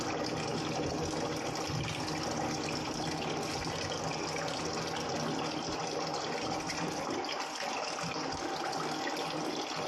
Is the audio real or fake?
real